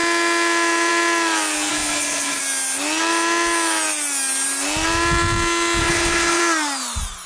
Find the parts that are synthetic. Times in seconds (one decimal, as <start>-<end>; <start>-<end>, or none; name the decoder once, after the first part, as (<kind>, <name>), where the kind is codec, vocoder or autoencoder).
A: 1.7-2.4 (codec, HILCodec); 5.8-6.4